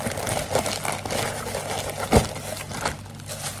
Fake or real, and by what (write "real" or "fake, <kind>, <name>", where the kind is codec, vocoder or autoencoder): real